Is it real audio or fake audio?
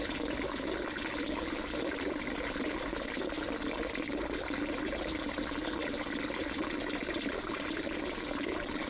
real